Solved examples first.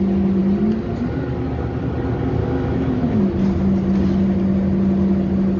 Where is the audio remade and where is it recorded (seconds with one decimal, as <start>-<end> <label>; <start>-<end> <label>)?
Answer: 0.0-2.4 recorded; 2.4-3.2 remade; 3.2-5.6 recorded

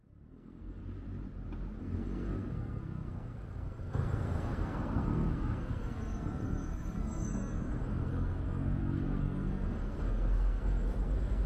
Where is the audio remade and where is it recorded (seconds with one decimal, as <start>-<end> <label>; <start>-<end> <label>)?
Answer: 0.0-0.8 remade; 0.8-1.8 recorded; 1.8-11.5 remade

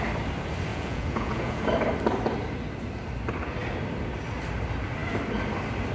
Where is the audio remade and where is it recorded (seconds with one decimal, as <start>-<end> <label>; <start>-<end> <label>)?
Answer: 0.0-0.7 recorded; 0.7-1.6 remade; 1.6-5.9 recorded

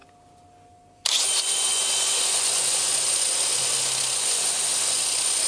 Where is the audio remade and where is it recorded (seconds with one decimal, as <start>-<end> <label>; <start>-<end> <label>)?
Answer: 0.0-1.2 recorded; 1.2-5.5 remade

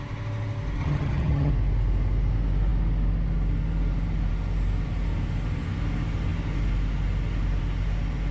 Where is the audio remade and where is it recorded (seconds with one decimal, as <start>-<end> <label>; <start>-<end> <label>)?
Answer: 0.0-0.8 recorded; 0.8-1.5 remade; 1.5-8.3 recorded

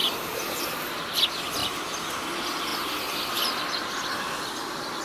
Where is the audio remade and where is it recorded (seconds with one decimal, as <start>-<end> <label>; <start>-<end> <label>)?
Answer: 0.0-0.6 remade; 0.6-1.6 recorded; 1.6-2.1 remade; 2.1-5.0 recorded

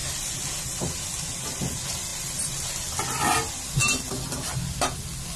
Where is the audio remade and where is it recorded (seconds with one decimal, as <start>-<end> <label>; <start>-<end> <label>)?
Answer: 0.0-0.9 remade; 0.9-2.1 recorded; 2.1-2.7 remade; 2.7-5.4 recorded